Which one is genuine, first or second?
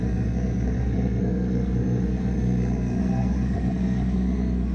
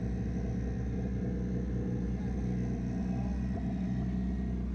second